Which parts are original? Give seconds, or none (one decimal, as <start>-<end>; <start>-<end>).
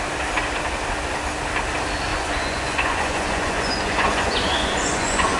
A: 0.0-2.1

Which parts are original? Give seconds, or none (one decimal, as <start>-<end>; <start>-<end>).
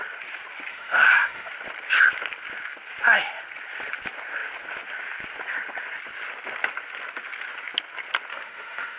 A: 0.0-0.7; 1.5-8.3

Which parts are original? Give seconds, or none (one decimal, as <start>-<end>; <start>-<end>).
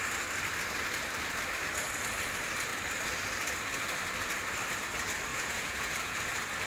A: 0.0-5.3; 6.2-6.7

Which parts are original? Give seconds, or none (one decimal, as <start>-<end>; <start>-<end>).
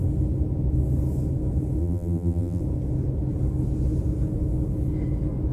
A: 0.0-1.8; 2.6-5.5